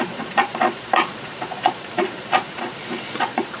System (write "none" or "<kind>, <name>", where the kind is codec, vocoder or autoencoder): vocoder, Vocos